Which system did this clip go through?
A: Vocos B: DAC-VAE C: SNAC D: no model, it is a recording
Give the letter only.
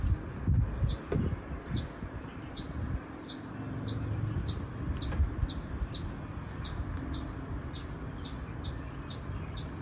D